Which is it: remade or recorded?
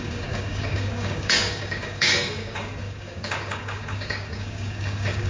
remade